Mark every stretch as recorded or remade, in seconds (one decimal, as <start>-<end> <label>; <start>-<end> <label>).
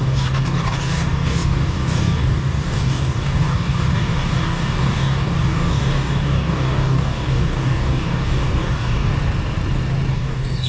0.0-9.1 remade; 9.1-10.1 recorded; 10.1-10.7 remade